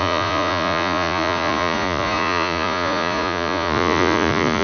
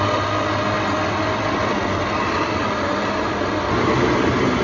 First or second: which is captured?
second